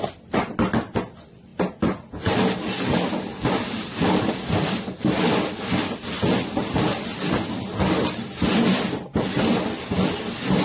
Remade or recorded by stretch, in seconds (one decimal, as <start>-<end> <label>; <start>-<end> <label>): 0.0-10.6 recorded